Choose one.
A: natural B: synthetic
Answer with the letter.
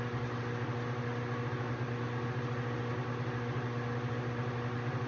A